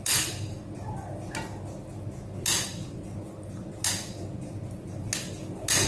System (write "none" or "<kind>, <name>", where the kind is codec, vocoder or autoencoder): none